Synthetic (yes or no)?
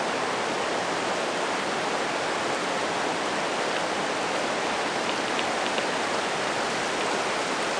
no